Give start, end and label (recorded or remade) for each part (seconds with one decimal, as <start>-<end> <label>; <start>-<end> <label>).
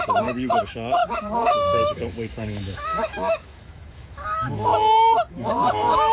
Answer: 0.0-4.7 remade; 4.7-5.3 recorded; 5.3-6.1 remade